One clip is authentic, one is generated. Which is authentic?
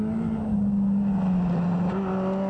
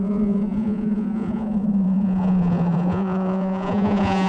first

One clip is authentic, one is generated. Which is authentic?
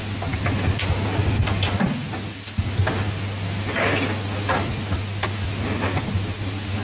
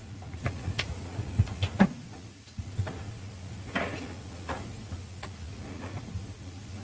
first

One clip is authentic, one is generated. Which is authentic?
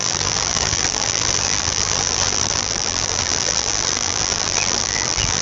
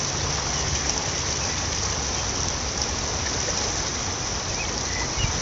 second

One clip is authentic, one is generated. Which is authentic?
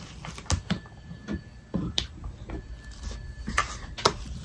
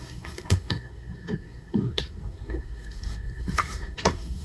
first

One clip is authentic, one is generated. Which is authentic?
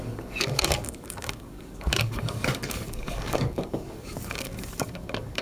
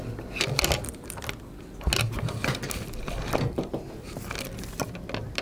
second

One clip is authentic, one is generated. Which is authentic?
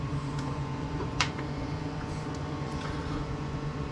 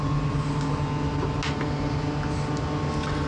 second